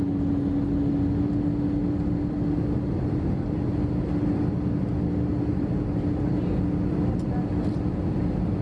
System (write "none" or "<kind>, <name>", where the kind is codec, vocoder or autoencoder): none